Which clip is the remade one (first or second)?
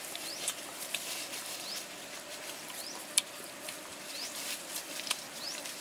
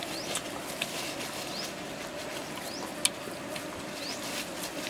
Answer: first